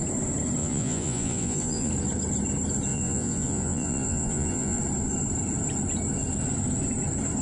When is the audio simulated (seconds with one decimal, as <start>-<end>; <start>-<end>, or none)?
0.6-1.9; 2.9-4.8